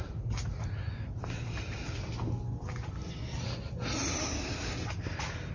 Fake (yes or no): no